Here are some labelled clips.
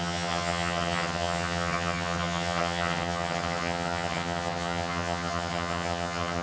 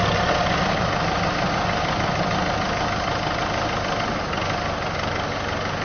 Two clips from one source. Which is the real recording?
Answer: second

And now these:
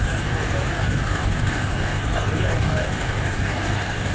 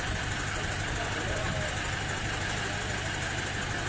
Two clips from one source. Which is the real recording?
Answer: second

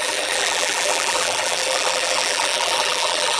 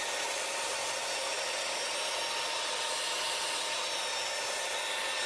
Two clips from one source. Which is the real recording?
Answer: second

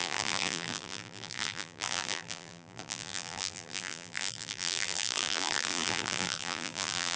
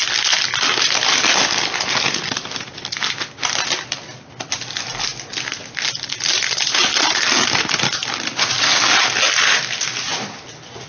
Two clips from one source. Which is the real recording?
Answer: second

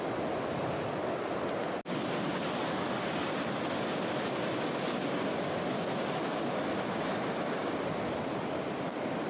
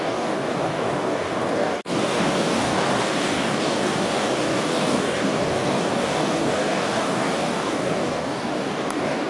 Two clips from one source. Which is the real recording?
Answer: first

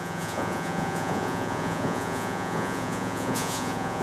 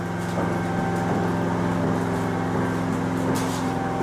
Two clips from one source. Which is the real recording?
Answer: second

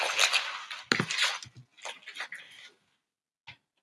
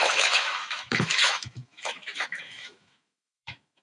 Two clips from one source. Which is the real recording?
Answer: first